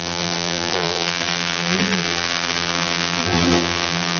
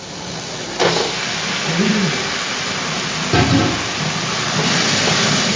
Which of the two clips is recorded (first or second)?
second